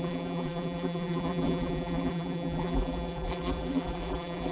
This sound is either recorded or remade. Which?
remade